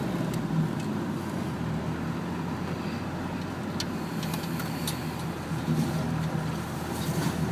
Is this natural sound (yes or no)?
yes